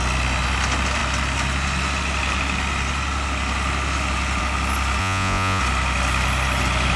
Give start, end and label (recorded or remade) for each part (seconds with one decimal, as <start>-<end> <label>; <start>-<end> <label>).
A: 0.0-5.0 recorded; 5.0-5.6 remade; 5.6-7.0 recorded

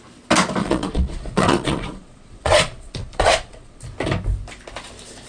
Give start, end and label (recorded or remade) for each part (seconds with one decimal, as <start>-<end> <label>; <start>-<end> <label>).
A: 0.0-0.6 recorded; 0.6-3.8 remade; 3.8-5.3 recorded